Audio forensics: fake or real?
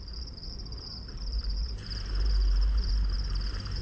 fake